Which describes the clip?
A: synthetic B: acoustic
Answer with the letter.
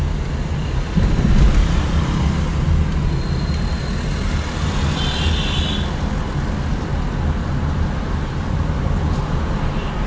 B